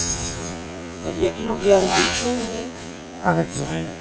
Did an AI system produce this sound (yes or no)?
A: yes